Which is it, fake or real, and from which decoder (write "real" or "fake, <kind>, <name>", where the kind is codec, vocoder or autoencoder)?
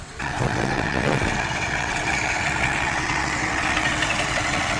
fake, vocoder, WaveNeXt